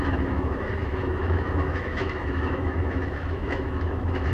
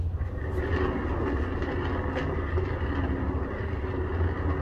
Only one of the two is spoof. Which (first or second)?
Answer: first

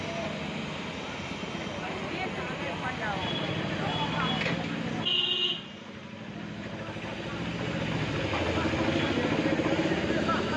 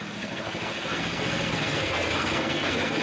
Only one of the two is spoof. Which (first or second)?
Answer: second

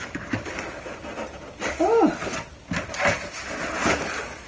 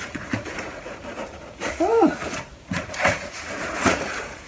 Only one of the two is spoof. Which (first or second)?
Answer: second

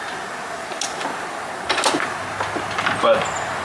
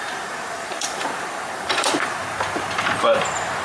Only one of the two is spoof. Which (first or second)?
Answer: second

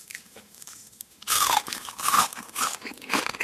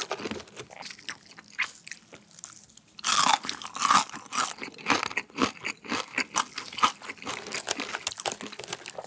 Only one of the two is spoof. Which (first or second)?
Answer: first